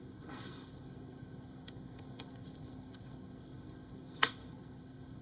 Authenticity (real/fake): fake